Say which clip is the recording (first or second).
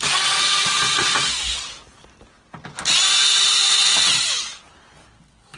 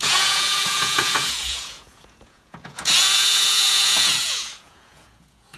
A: first